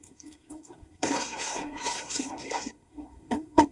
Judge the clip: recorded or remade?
remade